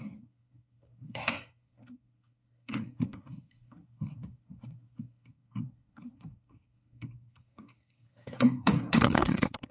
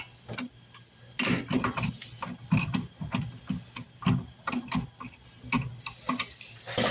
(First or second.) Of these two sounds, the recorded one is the second